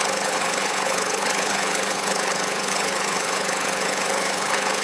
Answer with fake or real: fake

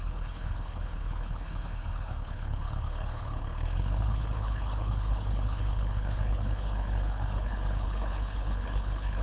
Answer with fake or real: fake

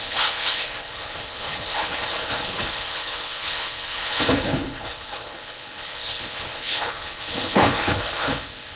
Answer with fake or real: fake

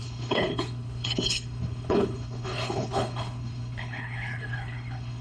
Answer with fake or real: fake